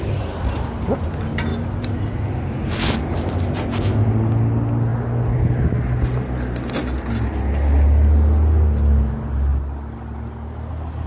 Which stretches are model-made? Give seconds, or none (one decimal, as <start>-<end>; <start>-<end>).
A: none